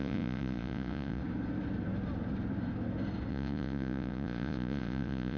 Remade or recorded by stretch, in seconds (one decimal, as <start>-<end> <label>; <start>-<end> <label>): 0.0-1.2 remade; 1.2-3.3 recorded; 3.3-5.4 remade

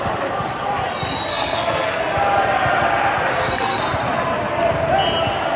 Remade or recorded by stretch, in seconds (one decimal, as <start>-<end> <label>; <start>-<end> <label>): 0.0-1.3 recorded; 1.3-2.0 remade; 2.0-3.3 recorded; 3.3-3.8 remade; 3.8-5.6 recorded

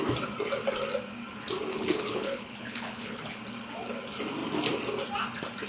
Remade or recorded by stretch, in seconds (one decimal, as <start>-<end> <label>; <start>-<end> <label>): 0.0-1.7 recorded; 1.7-3.4 remade; 3.4-5.7 recorded

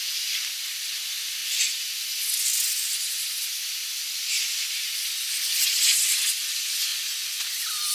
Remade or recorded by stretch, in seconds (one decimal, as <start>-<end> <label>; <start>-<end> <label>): 0.0-1.4 remade; 1.4-5.6 recorded; 5.6-7.9 remade

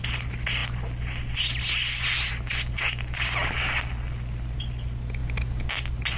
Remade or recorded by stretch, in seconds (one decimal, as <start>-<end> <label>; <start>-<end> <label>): 0.0-6.2 recorded